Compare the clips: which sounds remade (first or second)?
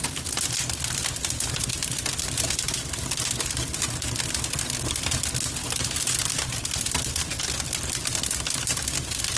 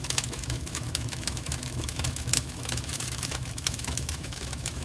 second